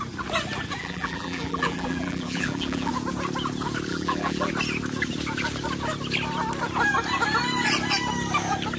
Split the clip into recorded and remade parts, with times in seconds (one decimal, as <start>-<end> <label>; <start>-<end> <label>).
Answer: 0.0-0.8 recorded; 0.8-2.9 remade; 2.9-3.9 recorded; 3.9-4.5 remade; 4.5-8.8 recorded